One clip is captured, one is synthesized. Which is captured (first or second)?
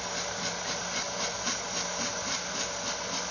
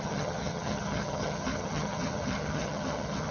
first